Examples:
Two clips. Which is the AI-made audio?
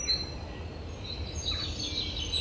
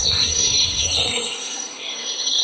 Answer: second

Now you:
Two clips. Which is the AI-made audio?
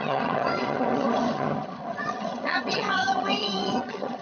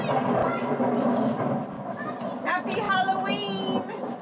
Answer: first